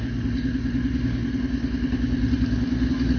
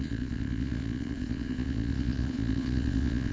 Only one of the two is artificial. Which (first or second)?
second